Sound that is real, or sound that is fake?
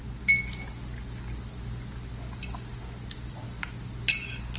real